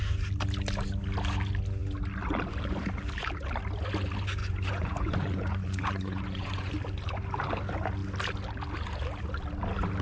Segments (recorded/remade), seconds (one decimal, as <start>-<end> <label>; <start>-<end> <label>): 0.0-4.4 recorded; 4.4-6.7 remade; 6.7-10.0 recorded